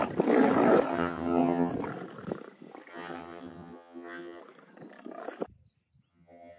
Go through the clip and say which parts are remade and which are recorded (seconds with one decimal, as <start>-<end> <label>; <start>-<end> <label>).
0.0-0.9 recorded; 0.9-1.7 remade; 1.7-2.9 recorded; 2.9-4.4 remade; 4.4-6.1 recorded; 6.1-6.6 remade